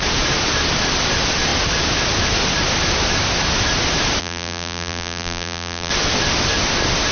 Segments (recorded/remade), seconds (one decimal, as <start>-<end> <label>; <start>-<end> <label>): 0.0-4.2 recorded; 4.2-5.9 remade; 5.9-7.1 recorded